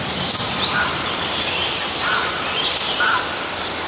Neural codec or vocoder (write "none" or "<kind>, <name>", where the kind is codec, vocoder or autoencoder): none